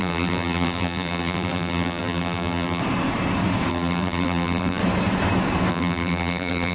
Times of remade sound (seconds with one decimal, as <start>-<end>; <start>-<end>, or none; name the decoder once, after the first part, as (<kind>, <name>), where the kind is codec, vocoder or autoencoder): 0.0-2.8 (vocoder, BigVGAN v2); 3.7-4.8; 5.7-6.7